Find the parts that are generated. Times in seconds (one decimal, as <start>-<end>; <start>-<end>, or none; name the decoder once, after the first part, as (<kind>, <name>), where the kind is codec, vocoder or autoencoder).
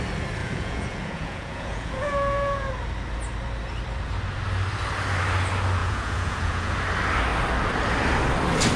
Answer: 0.4-2.7 (vocoder, Vocos); 5.8-6.7